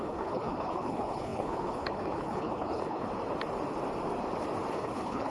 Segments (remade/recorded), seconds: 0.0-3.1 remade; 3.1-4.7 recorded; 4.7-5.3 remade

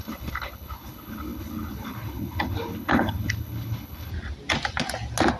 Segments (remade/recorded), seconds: 0.0-4.1 remade; 4.1-5.4 recorded

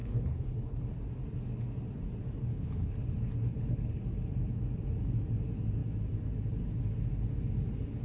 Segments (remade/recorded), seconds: 0.0-1.0 remade; 1.0-2.5 recorded; 2.5-4.0 remade; 4.0-8.0 recorded

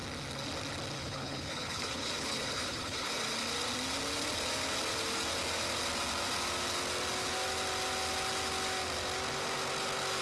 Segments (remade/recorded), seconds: 0.0-1.0 recorded; 1.0-3.1 remade; 3.1-10.2 recorded

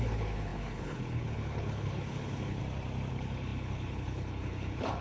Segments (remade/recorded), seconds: 0.0-2.6 remade; 2.6-3.1 recorded; 3.1-5.0 remade

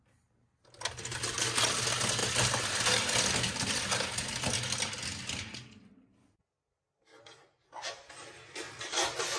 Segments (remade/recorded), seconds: 0.0-9.4 recorded

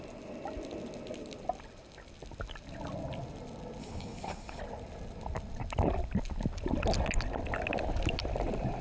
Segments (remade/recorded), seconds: 0.0-3.8 recorded; 3.8-4.6 remade; 4.6-8.8 recorded

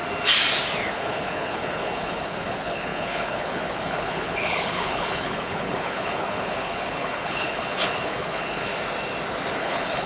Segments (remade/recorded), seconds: 0.0-0.9 recorded; 0.9-8.7 remade; 8.7-9.6 recorded; 9.6-10.1 remade